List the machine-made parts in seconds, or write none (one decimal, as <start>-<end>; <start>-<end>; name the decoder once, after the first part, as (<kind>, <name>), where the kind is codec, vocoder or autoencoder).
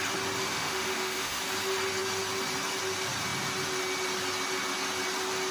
0.5-1.4 (autoencoder, DAC-VAE)